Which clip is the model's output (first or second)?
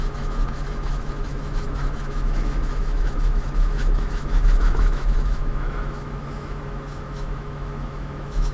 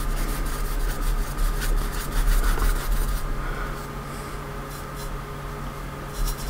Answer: first